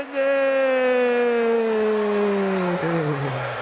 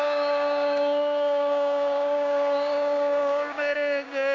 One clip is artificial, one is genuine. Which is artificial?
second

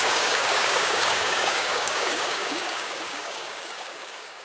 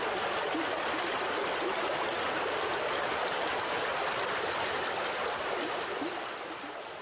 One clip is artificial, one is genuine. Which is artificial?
first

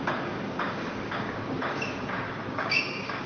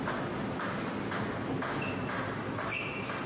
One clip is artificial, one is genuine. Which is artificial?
first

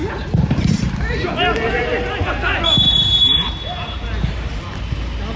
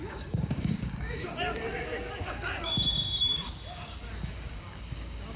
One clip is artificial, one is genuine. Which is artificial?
second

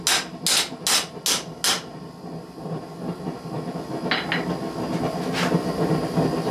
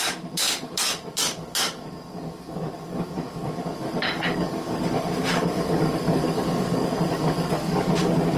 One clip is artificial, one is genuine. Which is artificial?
second